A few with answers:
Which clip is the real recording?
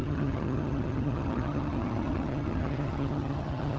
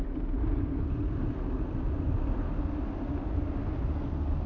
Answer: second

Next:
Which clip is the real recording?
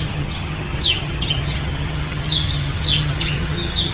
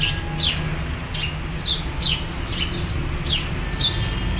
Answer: second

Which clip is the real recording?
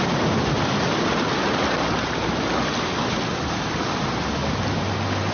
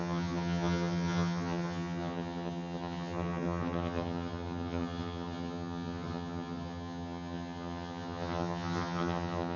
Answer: first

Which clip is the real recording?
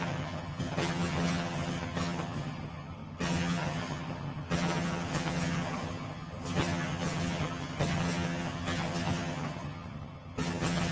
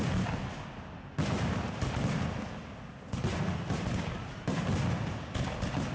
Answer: second